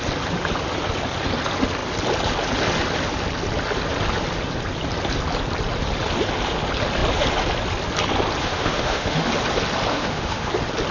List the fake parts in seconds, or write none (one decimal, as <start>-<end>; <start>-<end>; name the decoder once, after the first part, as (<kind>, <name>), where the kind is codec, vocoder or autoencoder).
8.4-9.3 (autoencoder, DAC-VAE); 9.9-10.5

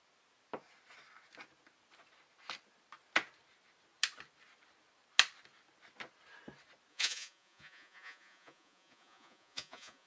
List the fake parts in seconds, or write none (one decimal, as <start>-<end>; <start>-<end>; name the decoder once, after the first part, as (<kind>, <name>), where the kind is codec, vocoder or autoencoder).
6.9-10.1 (vocoder, Vocos)

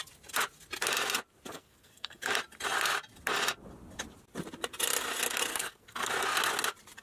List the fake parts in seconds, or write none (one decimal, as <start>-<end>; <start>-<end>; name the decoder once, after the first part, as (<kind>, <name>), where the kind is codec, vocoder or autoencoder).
1.5-2.3 (codec, SNAC); 5.5-6.1

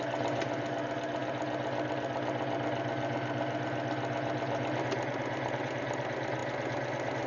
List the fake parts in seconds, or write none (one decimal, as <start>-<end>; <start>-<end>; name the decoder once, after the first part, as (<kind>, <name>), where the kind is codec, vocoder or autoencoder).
none